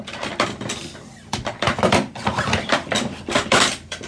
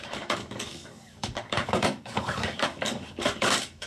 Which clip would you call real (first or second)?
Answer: first